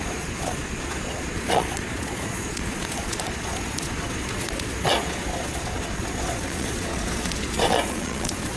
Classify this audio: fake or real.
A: fake